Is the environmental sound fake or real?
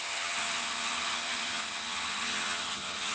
fake